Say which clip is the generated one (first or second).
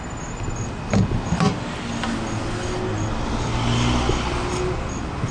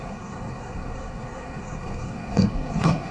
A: second